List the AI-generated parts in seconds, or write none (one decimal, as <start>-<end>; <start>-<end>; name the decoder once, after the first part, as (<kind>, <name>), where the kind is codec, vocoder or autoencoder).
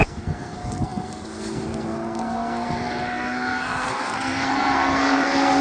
0.0-5.6 (codec, SNAC)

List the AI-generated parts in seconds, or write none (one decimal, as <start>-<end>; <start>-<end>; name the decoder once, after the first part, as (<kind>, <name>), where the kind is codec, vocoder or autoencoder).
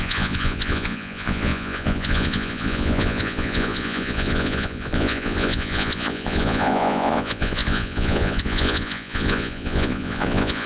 0.0-10.7 (vocoder, Vocos)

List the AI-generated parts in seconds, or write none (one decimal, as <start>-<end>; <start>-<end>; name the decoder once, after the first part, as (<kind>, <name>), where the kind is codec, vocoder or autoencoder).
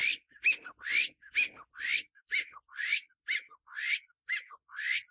none